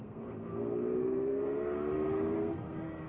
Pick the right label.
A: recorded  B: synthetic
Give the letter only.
B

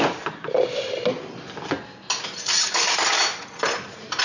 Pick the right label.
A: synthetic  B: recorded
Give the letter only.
B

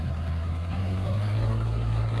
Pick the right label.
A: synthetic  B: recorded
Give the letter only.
A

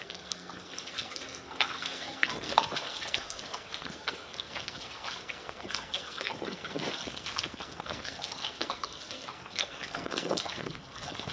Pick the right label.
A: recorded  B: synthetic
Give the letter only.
B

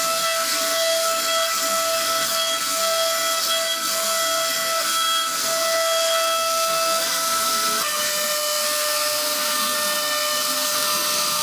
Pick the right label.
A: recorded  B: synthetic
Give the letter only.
B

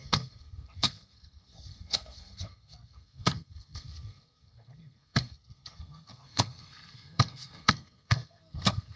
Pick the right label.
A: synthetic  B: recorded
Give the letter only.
A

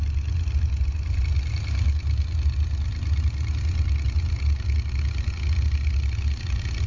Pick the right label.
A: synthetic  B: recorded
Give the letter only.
B